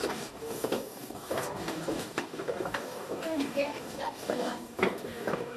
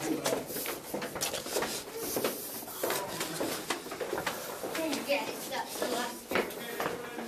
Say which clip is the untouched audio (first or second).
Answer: second